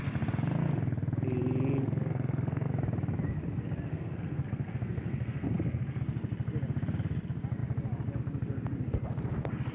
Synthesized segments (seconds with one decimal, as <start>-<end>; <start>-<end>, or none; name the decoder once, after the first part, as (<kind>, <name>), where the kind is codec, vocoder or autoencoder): 1.8-2.7 (codec, SNAC); 3.9-6.0